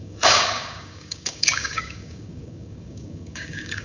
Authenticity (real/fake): fake